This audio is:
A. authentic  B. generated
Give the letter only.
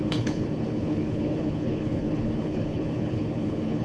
B